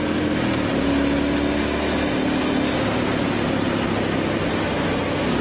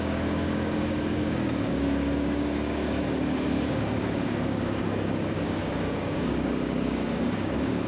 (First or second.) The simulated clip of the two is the second